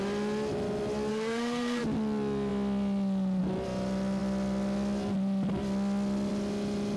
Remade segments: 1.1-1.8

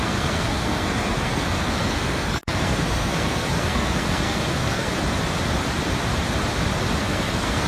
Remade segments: 0.0-4.9; 7.0-7.7

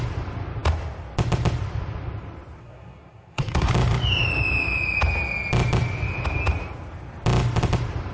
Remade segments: 2.6-3.7

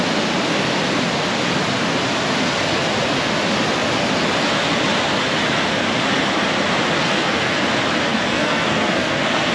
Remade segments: 7.0-7.6; 8.1-9.5

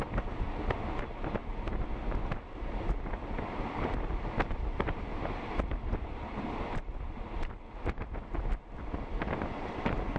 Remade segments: none